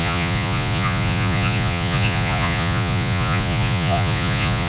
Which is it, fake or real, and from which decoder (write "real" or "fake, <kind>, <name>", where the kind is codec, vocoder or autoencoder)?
fake, vocoder, Vocos